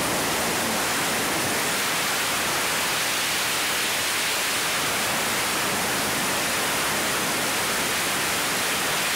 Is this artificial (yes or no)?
no